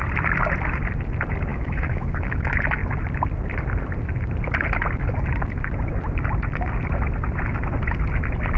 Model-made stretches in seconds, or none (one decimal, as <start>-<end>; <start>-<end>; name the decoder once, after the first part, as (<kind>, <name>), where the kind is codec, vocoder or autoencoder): 1.5-2.4 (autoencoder, DAC-VAE)